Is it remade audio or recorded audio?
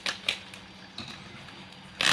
recorded